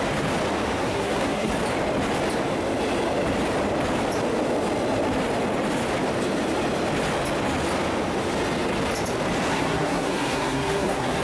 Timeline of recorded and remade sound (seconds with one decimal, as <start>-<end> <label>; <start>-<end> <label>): 0.0-0.8 recorded; 0.8-1.5 remade; 1.5-9.5 recorded; 9.5-11.2 remade